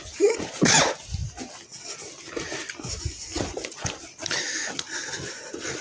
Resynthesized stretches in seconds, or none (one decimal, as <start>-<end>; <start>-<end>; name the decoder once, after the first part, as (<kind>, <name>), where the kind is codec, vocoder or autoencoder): none